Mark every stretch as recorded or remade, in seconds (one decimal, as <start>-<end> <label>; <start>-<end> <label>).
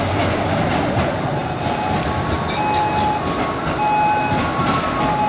0.0-5.3 recorded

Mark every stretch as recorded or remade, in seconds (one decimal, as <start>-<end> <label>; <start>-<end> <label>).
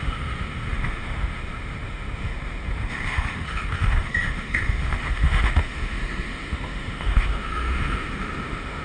0.0-8.8 remade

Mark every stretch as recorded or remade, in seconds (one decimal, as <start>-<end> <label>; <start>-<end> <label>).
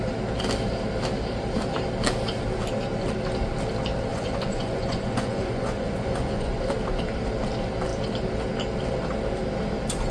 0.0-4.1 recorded; 4.1-6.6 remade; 6.6-10.1 recorded